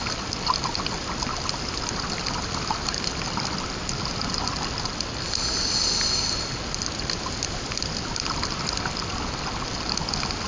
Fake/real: real